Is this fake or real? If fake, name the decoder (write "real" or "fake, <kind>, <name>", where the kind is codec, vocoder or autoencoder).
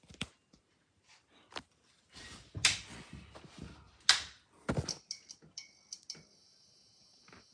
real